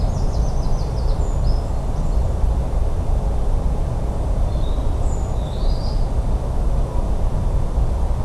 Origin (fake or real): real